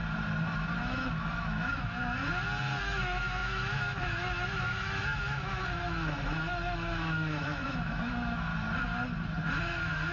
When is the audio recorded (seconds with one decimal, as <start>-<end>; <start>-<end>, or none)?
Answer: 0.0-0.8; 2.2-2.8; 8.5-9.6